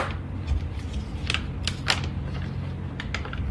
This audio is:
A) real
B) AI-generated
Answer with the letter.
A